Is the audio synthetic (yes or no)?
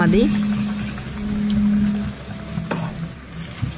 no